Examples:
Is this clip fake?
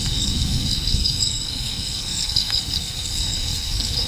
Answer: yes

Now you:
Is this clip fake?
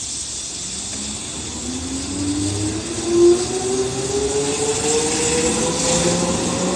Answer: no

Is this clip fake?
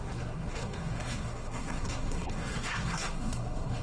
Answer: yes